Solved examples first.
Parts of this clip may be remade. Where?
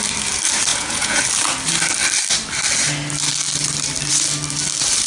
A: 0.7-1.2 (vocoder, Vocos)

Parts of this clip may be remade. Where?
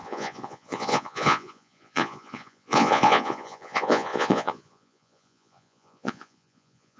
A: 0.0-7.0 (vocoder, Vocos)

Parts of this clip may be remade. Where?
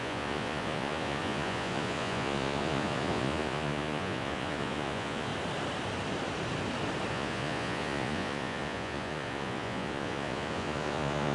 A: 0.0-5.3 (vocoder, Vocos); 7.1-11.3